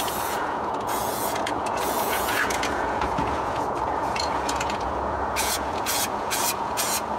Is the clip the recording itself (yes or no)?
no